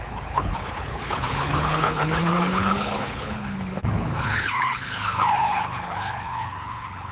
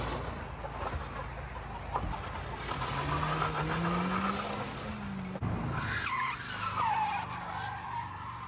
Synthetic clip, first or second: first